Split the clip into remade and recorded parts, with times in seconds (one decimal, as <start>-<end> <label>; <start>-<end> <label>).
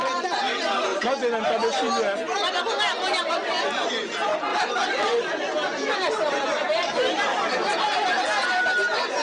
0.0-4.5 recorded; 4.5-5.2 remade; 5.2-9.2 recorded